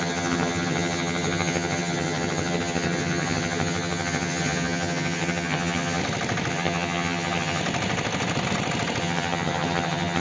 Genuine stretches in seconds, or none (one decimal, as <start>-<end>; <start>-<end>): 6.0-6.5; 7.6-9.0